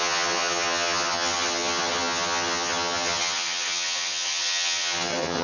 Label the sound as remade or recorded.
remade